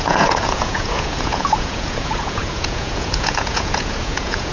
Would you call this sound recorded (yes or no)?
no